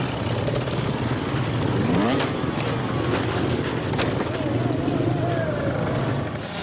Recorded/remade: recorded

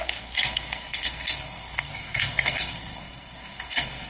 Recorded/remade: remade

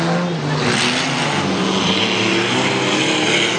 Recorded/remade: recorded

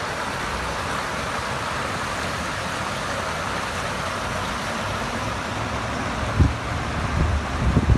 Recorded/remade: recorded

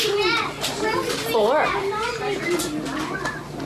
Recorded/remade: recorded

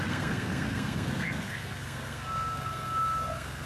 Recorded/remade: remade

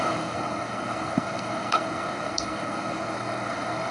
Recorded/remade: remade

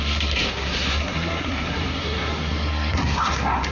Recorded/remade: remade